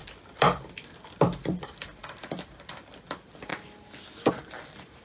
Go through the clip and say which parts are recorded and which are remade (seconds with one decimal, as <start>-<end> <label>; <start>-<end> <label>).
0.0-3.5 remade; 3.5-4.3 recorded; 4.3-5.0 remade